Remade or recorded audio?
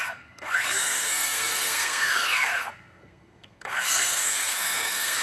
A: remade